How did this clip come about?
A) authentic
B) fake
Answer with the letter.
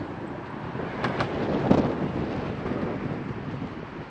A